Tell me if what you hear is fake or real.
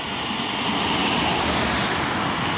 real